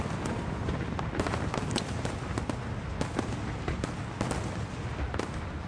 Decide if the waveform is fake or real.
real